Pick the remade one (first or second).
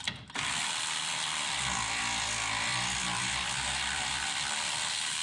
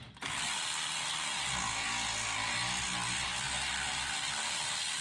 first